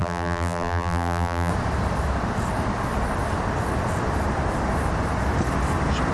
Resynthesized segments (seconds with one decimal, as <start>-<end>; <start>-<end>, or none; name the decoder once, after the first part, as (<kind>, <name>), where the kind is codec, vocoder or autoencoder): 0.0-1.5 (vocoder, BigVGAN v2)